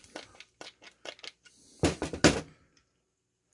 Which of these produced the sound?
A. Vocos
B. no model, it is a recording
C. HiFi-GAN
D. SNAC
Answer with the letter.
B